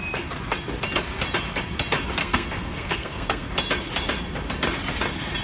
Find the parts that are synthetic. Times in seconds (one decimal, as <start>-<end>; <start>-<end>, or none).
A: 2.2-3.5